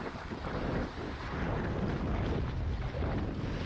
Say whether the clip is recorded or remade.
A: recorded